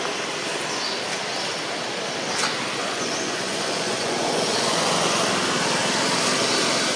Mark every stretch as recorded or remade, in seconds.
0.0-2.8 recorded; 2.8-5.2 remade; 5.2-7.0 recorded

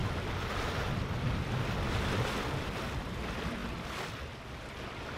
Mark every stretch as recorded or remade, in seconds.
0.0-5.2 recorded

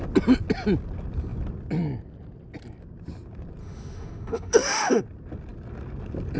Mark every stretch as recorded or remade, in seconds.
0.0-3.6 recorded; 3.6-5.0 remade; 5.0-6.4 recorded

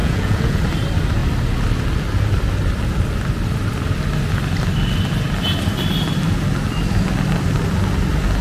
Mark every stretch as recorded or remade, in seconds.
0.0-0.6 remade; 0.6-8.4 recorded

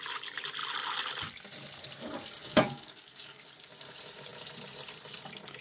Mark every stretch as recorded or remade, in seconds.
0.0-2.4 recorded; 2.4-3.4 remade; 3.4-5.6 recorded